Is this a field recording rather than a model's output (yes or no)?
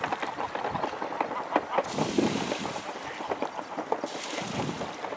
no